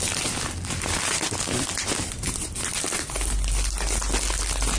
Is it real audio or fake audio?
real